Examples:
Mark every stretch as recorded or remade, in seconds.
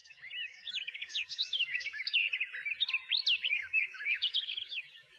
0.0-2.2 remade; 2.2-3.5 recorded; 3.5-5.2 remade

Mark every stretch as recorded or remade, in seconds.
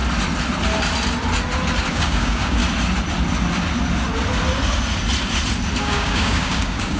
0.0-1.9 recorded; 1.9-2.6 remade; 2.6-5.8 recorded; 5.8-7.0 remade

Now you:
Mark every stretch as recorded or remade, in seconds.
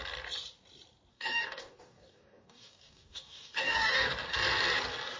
0.0-1.1 recorded; 1.1-4.1 remade; 4.1-5.2 recorded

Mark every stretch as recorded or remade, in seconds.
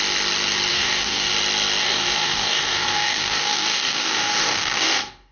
0.0-0.7 recorded; 0.7-1.3 remade; 1.3-1.8 recorded; 1.8-5.3 remade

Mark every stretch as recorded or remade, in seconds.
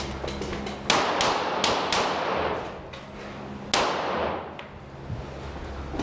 0.0-6.0 recorded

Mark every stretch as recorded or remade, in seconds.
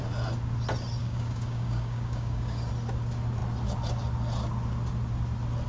0.0-1.0 recorded; 1.0-2.7 remade; 2.7-5.7 recorded